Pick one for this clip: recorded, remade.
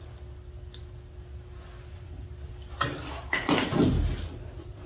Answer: recorded